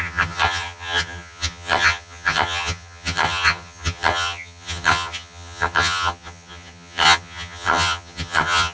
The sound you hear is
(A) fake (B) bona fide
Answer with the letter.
A